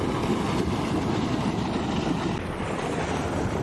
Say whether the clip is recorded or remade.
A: recorded